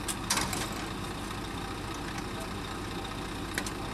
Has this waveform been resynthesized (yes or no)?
no